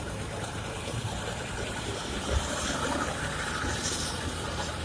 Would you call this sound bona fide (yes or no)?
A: no